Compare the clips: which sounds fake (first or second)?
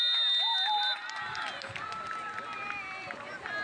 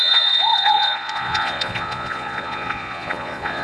second